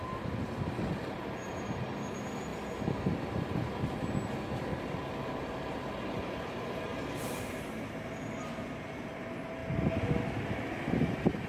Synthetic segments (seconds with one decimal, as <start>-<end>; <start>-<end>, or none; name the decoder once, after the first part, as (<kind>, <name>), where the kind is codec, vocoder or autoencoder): 6.9-8.4 (vocoder, BigVGAN v2)